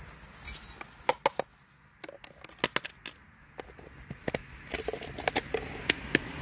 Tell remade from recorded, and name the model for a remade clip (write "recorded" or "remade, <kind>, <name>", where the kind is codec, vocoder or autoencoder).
recorded